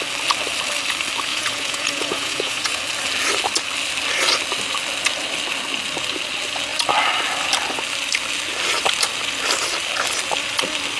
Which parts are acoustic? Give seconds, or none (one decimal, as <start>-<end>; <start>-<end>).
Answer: 0.0-1.3; 2.8-11.0